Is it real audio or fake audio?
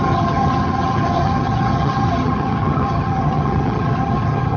fake